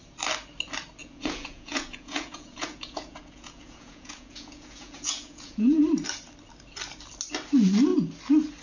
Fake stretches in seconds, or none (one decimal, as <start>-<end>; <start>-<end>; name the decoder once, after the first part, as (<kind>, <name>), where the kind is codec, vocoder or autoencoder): 1.0-5.8 (vocoder, Vocos)